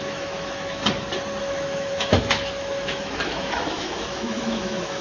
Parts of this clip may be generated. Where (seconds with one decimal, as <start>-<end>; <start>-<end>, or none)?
0.0-0.8; 1.4-5.0